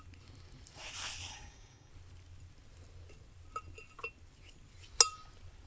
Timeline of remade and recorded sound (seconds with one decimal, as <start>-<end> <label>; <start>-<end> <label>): 0.0-1.3 recorded; 1.3-1.9 remade; 1.9-5.7 recorded